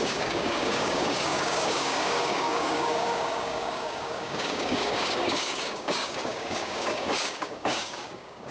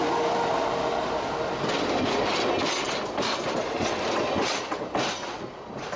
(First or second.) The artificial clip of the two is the first